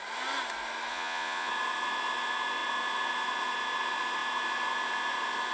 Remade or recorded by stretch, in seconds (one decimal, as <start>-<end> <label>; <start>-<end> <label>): 0.0-0.9 recorded; 0.9-1.5 remade; 1.5-5.5 recorded